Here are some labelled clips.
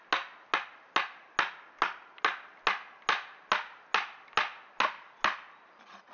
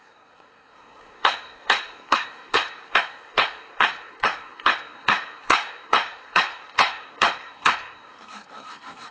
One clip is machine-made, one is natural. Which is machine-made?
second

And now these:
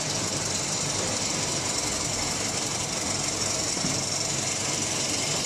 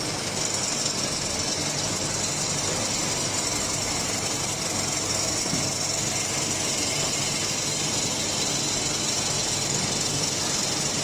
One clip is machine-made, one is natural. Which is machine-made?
first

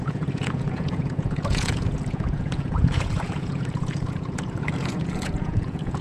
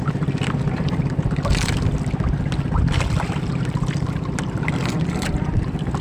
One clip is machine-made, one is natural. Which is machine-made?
first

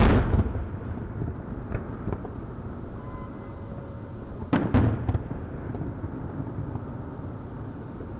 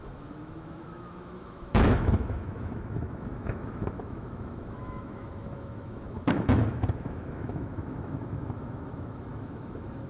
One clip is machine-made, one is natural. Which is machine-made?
second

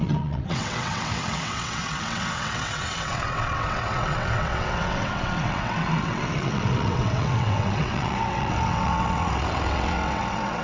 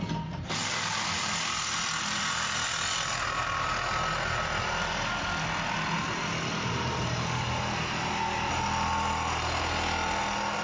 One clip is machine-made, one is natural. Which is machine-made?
first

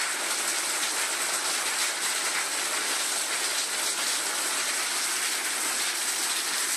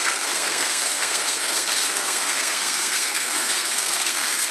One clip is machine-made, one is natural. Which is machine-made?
second